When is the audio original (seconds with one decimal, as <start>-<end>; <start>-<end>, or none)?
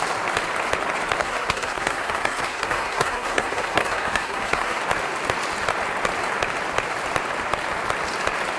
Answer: 0.0-1.2; 4.8-8.6